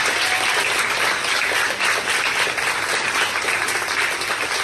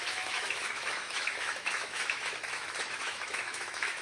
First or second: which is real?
first